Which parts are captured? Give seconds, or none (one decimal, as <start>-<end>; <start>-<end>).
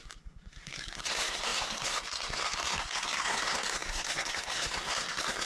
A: none